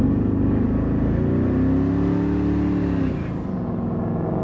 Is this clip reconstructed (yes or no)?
no